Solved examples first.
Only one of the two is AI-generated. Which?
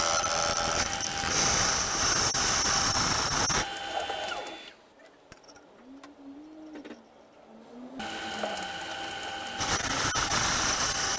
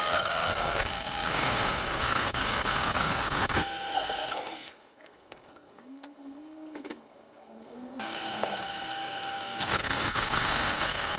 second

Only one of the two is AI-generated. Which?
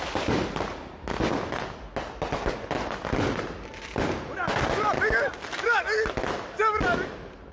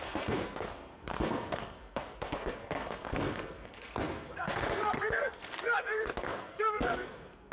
second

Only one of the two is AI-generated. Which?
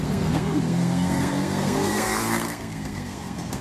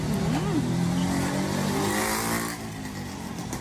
first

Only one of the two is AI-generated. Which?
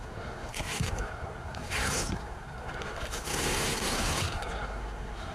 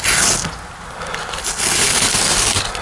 first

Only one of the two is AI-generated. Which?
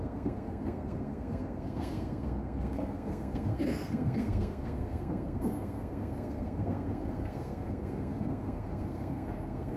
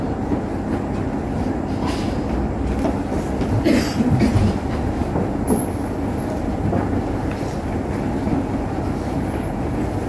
first